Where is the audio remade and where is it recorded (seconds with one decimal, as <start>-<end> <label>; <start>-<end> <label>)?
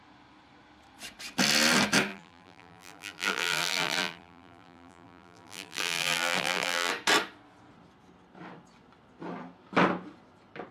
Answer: 0.0-2.1 recorded; 2.1-6.9 remade; 6.9-10.7 recorded